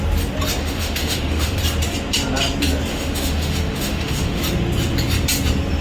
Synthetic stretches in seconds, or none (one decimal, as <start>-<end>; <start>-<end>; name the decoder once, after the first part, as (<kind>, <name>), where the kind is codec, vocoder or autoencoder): 0.6-1.6 (autoencoder, DAC-VAE); 2.9-4.4